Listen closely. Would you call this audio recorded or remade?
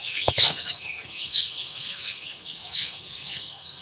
remade